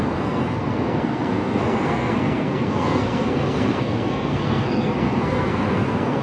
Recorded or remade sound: remade